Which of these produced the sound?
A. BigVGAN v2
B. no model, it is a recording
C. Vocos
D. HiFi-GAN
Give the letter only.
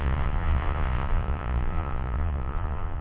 C